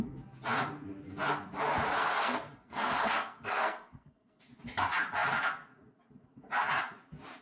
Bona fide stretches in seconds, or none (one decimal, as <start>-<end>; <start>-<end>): 0.0-2.0; 4.4-7.4